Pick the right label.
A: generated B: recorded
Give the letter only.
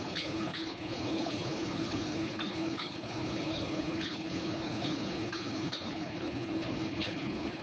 A